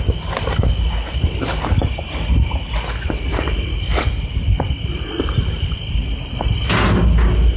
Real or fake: real